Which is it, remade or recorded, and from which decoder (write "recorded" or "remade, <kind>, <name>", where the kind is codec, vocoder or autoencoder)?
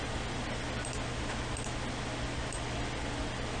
recorded